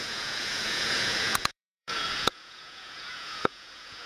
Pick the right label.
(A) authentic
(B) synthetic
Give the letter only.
B